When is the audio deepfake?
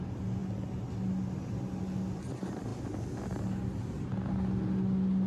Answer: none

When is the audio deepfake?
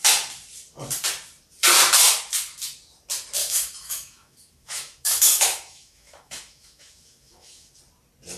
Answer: 3.4-7.8 (autoencoder, DAC-VAE)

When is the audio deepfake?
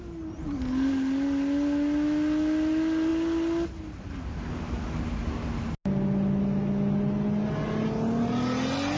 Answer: none